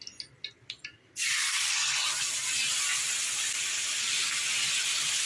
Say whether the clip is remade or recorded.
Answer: recorded